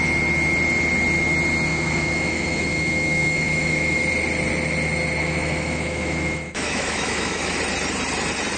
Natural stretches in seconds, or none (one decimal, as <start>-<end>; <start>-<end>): 0.0-1.7; 4.0-5.2; 7.6-8.6